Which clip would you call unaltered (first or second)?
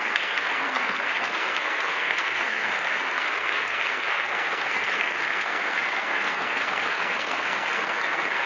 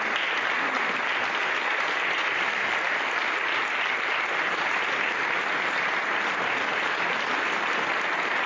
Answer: second